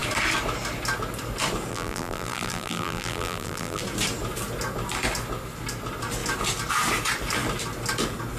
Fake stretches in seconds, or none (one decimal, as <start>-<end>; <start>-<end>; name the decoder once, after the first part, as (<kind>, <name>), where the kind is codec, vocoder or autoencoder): 1.7-3.8 (vocoder, BigVGAN v2)

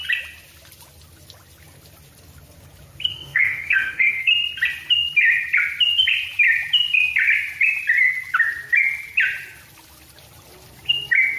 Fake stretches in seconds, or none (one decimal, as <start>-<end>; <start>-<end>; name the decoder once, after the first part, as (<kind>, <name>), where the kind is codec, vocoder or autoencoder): 3.1-4.3 (codec, SNAC)

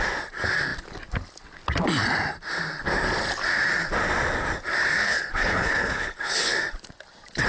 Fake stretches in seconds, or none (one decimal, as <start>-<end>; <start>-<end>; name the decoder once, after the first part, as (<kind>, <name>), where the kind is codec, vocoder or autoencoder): 5.0-6.5 (codec, HILCodec)

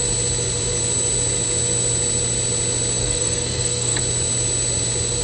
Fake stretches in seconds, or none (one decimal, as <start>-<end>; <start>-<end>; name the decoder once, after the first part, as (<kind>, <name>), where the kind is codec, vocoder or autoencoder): 3.0-4.0 (codec, SNAC)

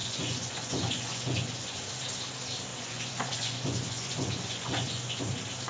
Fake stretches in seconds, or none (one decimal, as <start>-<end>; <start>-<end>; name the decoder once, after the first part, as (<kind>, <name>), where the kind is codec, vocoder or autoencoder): 0.0-1.8 (vocoder, Vocos); 2.7-5.2

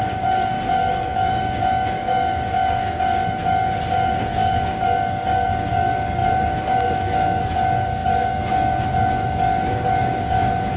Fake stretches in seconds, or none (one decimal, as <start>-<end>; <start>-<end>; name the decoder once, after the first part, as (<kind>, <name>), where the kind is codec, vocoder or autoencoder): 0.0-10.8 (codec, DAC)

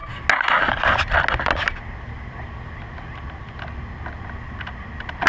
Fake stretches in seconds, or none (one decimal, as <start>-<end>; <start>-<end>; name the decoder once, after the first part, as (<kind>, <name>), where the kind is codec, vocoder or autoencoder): none